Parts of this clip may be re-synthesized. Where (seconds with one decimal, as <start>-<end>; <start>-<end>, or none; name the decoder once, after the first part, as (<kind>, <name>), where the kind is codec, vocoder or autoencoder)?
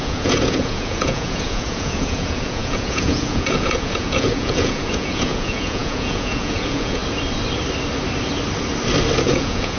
0.0-7.0 (vocoder, Vocos); 9.2-9.8